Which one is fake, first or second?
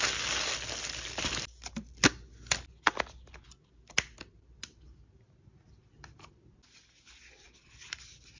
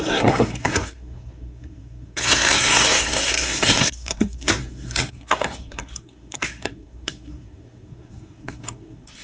second